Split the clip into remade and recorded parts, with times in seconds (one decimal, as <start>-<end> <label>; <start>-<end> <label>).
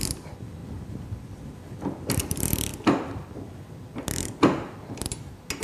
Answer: 0.0-0.6 remade; 0.6-1.1 recorded; 1.1-2.7 remade; 2.7-5.6 recorded